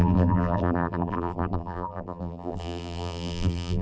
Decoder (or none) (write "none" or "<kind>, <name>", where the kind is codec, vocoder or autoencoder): vocoder, BigVGAN v2